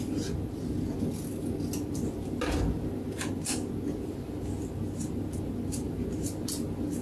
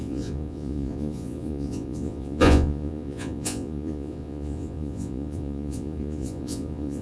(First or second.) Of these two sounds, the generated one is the second